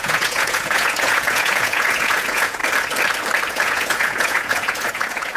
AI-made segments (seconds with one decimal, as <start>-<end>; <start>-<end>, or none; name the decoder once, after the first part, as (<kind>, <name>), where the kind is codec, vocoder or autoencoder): 0.0-2.6 (vocoder, Vocos); 3.5-5.4